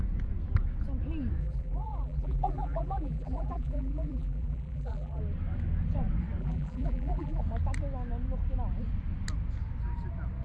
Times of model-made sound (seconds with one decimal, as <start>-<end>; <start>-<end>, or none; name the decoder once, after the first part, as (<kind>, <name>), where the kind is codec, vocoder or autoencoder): 1.4-5.2 (vocoder, BigVGAN v2); 6.4-7.4